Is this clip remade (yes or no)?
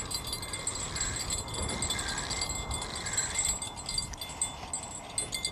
no